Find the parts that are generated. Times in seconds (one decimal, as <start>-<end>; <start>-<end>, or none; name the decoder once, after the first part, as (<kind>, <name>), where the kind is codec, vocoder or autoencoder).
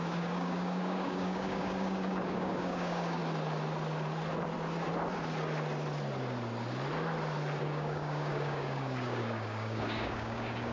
0.0-3.2 (codec, DAC); 7.6-10.7